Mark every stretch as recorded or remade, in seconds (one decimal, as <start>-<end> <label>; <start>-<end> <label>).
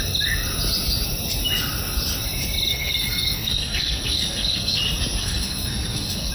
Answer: 0.0-2.7 recorded; 2.7-4.8 remade; 4.8-5.2 recorded; 5.2-6.3 remade